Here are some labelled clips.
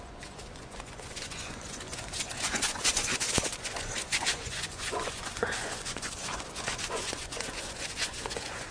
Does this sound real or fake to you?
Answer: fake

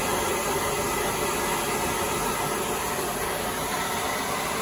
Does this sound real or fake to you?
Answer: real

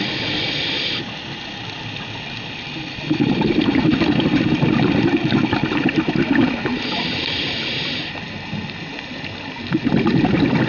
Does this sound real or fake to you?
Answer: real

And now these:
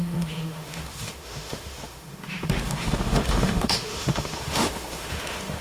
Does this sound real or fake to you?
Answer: fake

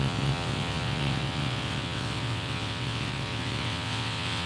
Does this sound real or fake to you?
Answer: fake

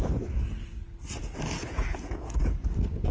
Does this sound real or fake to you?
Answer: real